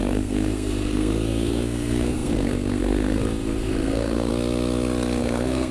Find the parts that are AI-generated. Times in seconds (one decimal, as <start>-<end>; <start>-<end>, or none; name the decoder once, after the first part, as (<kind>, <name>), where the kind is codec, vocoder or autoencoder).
0.0-4.3 (codec, SNAC); 5.2-5.7